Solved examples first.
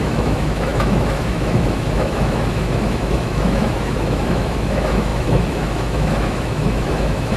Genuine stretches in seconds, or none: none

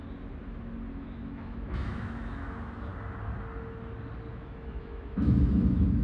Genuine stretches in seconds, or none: 0.0-0.9; 2.9-4.3

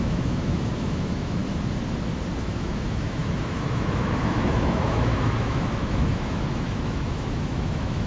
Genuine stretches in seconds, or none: 1.4-2.4

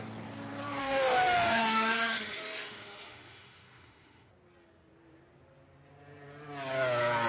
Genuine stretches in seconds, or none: 0.0-0.8; 4.3-7.3

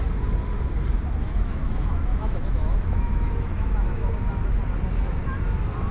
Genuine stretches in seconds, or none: 0.0-1.2; 4.1-5.9

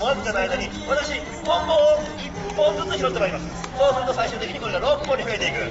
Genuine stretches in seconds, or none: 0.0-2.4

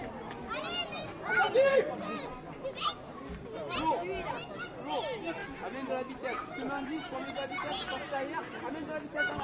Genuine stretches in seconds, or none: 0.0-9.4

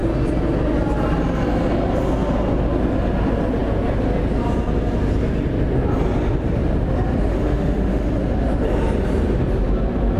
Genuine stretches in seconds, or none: 0.0-7.3; 8.1-10.2